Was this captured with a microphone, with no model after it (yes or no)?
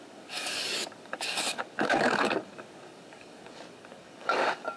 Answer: no